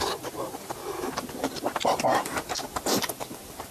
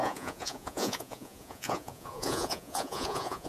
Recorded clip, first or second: first